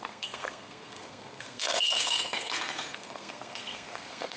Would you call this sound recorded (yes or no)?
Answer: no